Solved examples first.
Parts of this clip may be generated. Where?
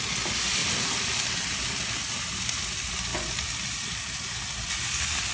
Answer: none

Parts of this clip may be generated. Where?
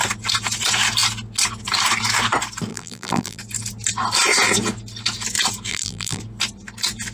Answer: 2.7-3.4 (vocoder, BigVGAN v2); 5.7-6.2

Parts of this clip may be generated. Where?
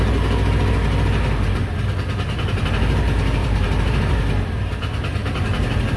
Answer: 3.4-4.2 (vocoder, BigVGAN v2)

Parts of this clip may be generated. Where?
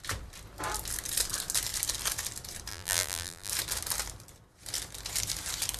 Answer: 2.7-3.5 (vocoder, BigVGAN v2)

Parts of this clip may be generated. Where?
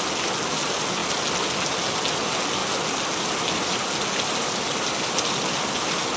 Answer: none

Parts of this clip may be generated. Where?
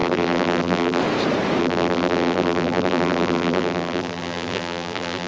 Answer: 0.0-1.0 (vocoder, BigVGAN v2); 1.6-5.3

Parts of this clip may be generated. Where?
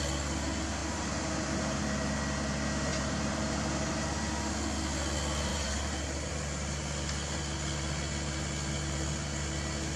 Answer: 0.8-1.8 (vocoder, BigVGAN v2); 2.9-3.9; 5.5-6.3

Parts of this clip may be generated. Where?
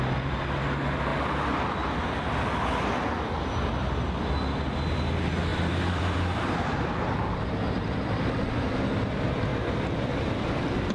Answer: 5.5-8.6 (vocoder, BigVGAN v2); 9.5-10.1